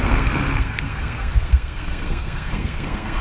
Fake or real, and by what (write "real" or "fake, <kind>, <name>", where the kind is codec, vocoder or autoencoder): fake, codec, SNAC